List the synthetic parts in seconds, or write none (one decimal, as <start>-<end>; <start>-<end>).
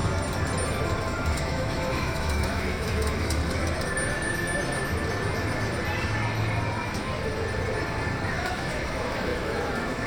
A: 1.0-3.4; 8.3-10.1